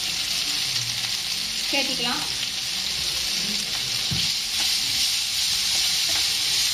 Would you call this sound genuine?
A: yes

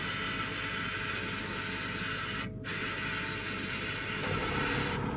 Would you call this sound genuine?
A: yes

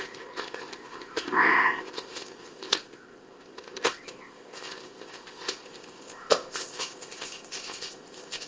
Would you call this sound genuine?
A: no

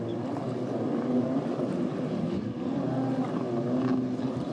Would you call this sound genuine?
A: yes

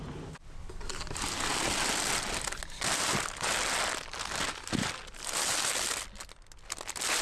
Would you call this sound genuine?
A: yes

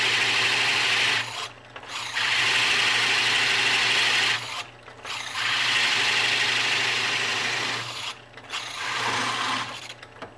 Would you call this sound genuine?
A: yes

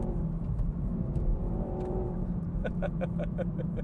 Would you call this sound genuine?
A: no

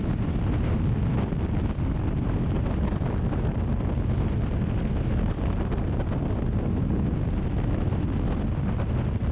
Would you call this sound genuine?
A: yes